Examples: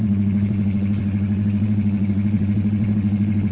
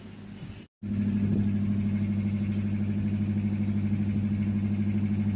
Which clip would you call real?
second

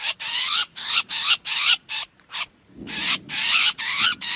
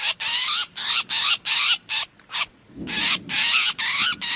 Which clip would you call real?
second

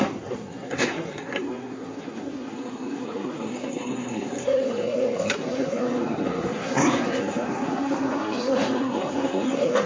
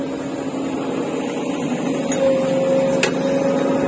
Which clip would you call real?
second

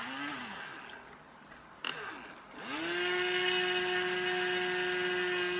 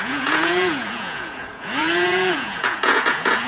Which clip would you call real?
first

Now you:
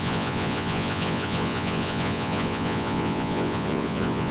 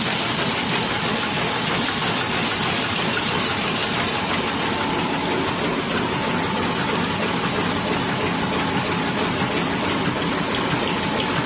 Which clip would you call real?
second